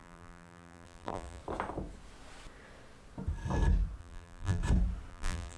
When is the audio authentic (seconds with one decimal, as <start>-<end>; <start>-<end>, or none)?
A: 1.4-4.0; 4.6-5.1